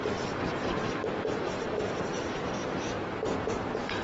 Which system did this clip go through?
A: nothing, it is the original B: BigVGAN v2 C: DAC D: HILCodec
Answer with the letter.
B